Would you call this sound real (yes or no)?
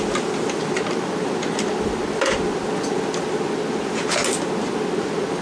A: yes